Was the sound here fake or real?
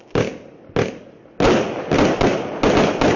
real